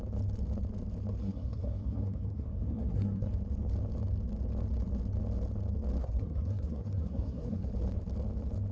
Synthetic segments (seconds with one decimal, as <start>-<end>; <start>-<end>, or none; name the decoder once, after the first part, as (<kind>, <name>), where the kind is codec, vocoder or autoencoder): 1.2-3.3 (codec, SNAC); 6.0-7.7